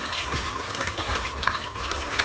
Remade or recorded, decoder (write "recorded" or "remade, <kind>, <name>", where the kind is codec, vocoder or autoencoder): remade, codec, SNAC